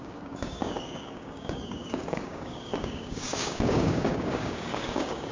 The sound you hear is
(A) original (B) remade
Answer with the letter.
B